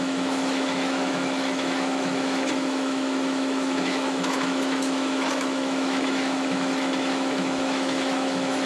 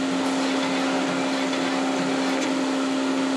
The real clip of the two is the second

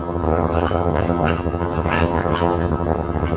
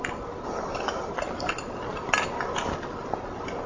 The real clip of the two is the second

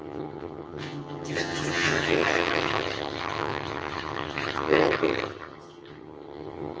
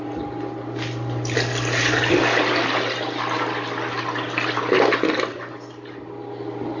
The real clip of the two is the second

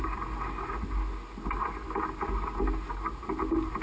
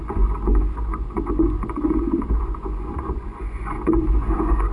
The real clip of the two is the first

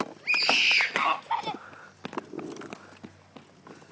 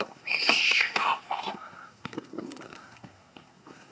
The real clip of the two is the first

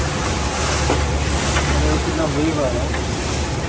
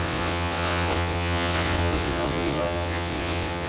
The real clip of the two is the first